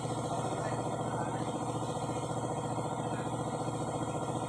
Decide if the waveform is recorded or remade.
recorded